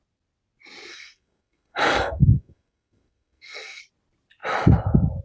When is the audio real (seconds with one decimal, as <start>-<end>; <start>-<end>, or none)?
0.0-0.9; 3.8-5.2